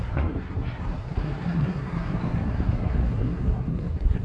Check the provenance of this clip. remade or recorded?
remade